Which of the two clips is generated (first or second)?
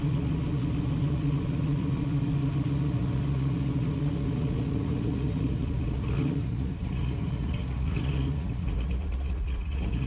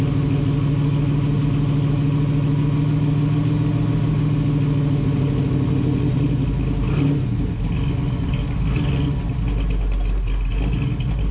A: first